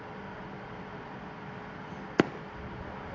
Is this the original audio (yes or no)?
yes